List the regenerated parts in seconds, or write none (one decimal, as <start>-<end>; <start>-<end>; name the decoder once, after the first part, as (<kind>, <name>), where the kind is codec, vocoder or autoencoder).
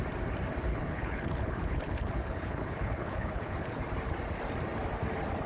0.7-3.8 (codec, HILCodec)